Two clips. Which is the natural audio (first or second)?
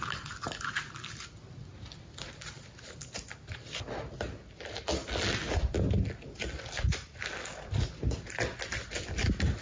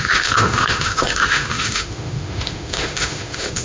first